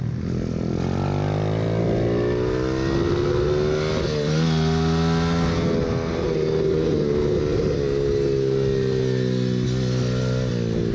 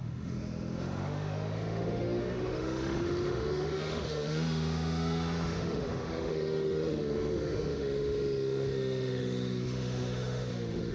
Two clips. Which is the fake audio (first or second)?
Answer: second